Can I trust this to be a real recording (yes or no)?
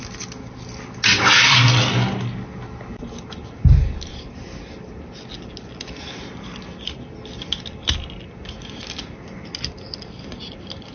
yes